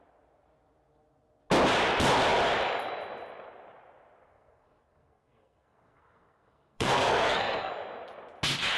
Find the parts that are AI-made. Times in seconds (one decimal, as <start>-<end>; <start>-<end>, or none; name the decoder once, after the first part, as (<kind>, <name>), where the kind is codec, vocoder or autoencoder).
4.2-7.7 (codec, SNAC)